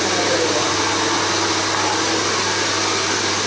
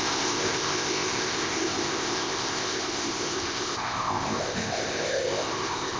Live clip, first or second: first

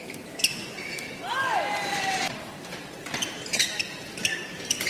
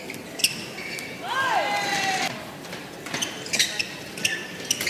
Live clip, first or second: second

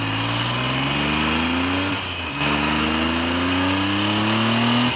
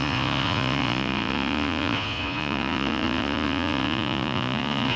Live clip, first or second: first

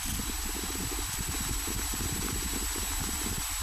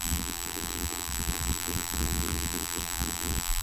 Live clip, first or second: first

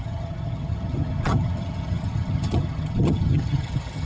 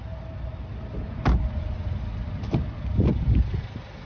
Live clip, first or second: second